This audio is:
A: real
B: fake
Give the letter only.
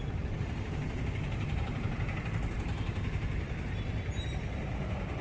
B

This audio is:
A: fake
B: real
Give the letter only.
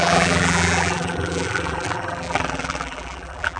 A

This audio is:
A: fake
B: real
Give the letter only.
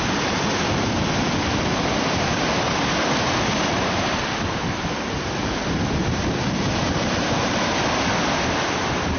B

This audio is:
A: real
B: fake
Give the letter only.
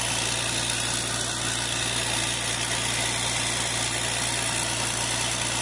A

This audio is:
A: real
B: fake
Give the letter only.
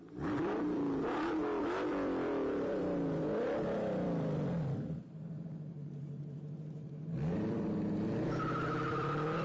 B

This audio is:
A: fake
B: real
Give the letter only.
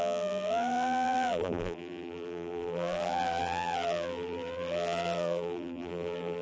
A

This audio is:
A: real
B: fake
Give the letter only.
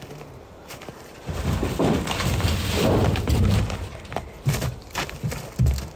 B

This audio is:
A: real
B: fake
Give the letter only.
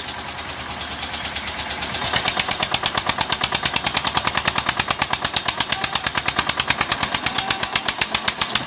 A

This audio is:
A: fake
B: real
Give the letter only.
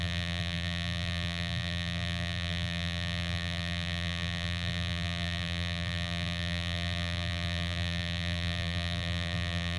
A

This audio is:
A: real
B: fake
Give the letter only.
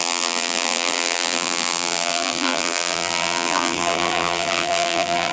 B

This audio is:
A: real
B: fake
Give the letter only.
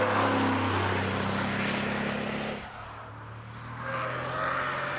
A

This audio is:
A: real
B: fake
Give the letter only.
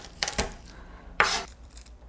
B